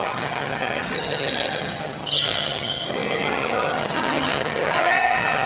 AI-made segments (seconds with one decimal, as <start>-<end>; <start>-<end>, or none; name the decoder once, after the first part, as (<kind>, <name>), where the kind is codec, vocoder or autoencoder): 0.0-5.5 (vocoder, HiFi-GAN)